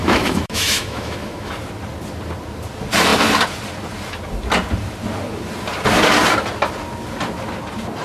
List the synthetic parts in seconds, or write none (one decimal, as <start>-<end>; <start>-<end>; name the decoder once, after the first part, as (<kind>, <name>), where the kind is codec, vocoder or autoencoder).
0.0-1.5 (autoencoder, DAC-VAE)